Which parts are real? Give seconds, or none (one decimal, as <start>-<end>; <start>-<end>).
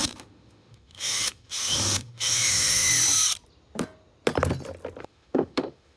2.9-5.0